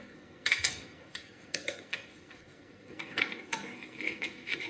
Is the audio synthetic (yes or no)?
yes